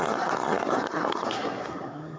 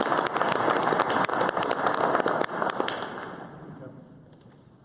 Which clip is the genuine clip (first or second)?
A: second